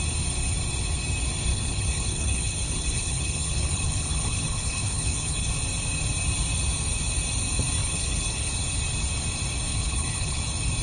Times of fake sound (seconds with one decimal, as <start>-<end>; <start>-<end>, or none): 1.5-5.5; 7.8-8.5; 9.7-10.4